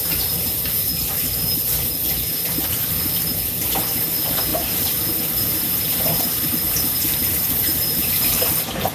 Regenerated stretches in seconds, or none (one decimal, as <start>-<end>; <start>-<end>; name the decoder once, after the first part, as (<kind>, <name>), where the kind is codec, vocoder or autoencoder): 0.0-0.9 (vocoder, BigVGAN v2); 4.1-8.9